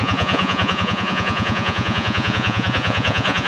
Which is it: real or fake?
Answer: fake